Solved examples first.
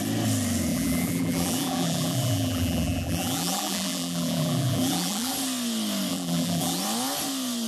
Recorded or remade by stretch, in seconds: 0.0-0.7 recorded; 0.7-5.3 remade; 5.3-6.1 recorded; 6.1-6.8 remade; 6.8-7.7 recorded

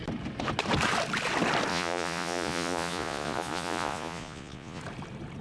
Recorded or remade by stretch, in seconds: 0.0-1.7 recorded; 1.7-4.8 remade; 4.8-5.4 recorded

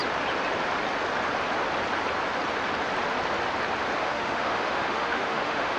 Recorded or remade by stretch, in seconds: 0.0-4.0 recorded; 4.0-5.8 remade

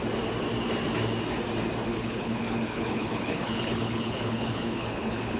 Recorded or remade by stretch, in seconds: 0.0-1.9 recorded; 1.9-5.4 remade

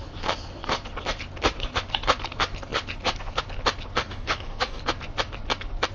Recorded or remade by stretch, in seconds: 0.0-4.0 recorded; 4.0-4.8 remade; 4.8-5.9 recorded